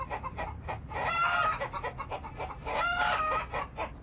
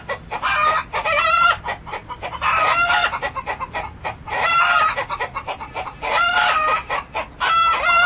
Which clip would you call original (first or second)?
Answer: first